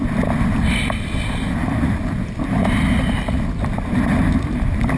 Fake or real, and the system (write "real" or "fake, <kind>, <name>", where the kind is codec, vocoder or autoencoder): real